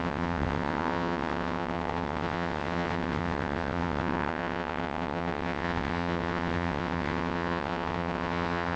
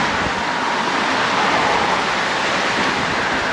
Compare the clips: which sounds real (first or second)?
second